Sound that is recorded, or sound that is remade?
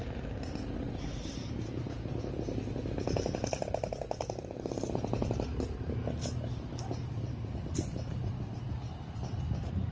recorded